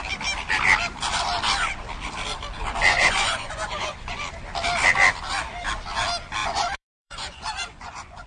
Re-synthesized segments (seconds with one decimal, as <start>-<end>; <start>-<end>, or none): 2.9-4.2; 6.4-8.3